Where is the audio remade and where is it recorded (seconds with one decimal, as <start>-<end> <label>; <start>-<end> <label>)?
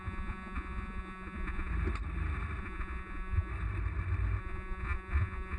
0.0-1.7 remade; 1.7-2.6 recorded; 2.6-3.5 remade; 3.5-4.4 recorded; 4.4-5.6 remade